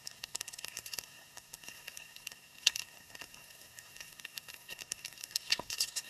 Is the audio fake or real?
fake